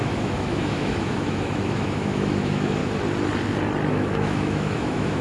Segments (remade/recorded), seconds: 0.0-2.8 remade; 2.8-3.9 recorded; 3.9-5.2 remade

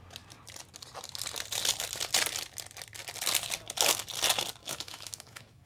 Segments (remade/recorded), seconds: 0.0-4.6 recorded; 4.6-5.7 remade

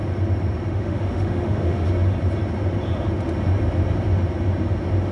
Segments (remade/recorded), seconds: 0.0-0.7 recorded; 0.7-1.9 remade; 1.9-5.1 recorded

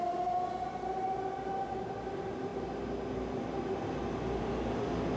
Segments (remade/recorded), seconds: 0.0-5.2 recorded

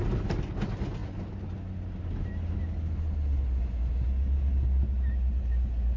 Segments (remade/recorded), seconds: 0.0-6.0 recorded